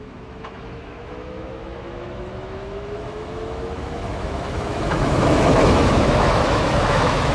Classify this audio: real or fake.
fake